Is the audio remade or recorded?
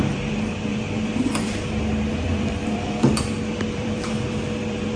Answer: remade